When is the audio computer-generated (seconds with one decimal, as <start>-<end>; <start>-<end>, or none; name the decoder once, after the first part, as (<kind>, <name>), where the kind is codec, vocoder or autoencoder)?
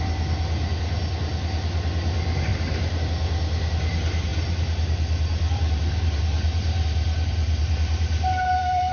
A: 2.5-3.0 (vocoder, BigVGAN v2); 4.3-8.9